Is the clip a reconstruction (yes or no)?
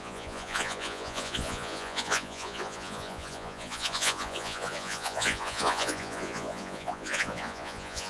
yes